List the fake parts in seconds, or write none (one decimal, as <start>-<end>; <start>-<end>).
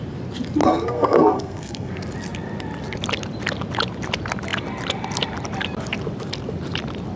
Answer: 0.6-1.9